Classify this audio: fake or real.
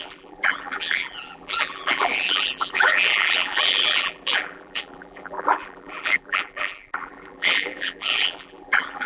fake